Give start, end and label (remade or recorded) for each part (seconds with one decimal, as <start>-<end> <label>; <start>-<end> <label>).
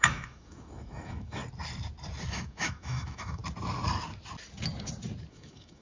0.0-1.4 remade; 1.4-2.3 recorded; 2.3-3.4 remade; 3.4-5.3 recorded; 5.3-5.8 remade